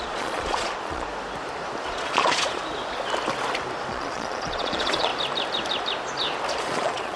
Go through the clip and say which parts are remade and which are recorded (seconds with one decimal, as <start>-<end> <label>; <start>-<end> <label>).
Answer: 0.0-1.1 remade; 1.1-1.9 recorded; 1.9-2.6 remade; 2.6-3.9 recorded; 3.9-5.1 remade; 5.1-6.6 recorded; 6.6-7.2 remade